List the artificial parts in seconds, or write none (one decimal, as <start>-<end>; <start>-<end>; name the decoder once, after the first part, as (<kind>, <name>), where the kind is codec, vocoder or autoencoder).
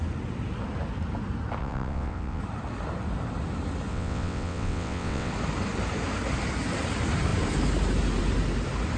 1.6-2.4 (vocoder, WaveNeXt); 3.9-5.3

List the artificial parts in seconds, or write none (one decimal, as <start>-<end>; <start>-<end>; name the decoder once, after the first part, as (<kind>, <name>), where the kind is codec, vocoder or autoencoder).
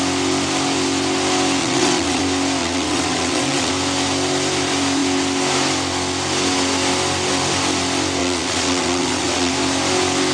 1.6-2.2 (vocoder, WaveNeXt); 2.6-3.7; 8.2-9.5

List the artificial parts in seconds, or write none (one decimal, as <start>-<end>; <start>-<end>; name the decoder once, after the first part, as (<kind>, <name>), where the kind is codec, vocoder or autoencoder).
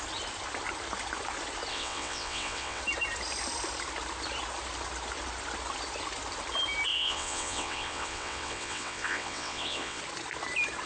1.7-2.8 (vocoder, WaveNeXt); 6.9-10.0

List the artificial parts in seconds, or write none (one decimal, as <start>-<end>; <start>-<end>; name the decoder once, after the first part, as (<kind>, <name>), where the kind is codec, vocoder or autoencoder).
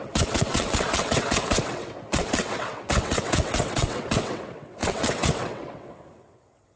0.0-6.8 (vocoder, WaveNeXt)